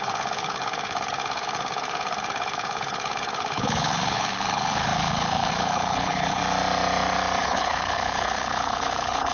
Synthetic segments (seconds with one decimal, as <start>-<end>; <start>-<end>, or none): 0.0-6.4; 7.4-9.3

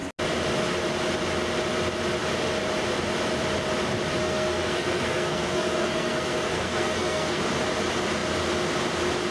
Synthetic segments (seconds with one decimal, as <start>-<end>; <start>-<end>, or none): 4.2-7.4

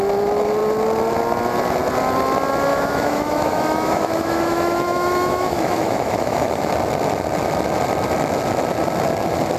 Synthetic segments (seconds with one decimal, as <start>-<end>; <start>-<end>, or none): 2.7-6.7

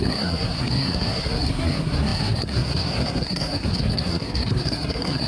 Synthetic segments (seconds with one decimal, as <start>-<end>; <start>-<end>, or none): 0.0-5.3

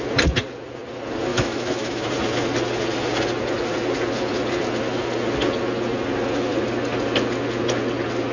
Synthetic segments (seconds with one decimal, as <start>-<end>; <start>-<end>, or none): 1.3-2.1